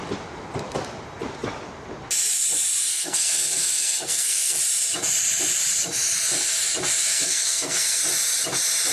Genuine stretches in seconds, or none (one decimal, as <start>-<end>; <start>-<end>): 0.0-2.9; 4.6-7.0; 8.0-8.9